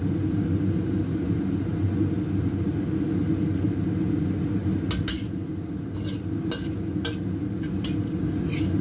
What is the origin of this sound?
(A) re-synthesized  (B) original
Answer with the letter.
B